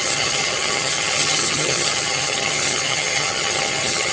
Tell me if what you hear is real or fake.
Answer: fake